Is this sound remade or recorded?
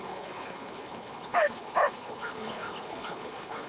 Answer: remade